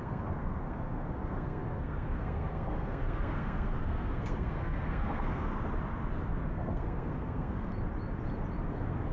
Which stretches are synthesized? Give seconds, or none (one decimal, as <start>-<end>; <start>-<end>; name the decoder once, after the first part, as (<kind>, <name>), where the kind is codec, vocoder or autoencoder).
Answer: 0.0-5.5 (codec, SNAC); 6.5-7.7; 8.7-9.1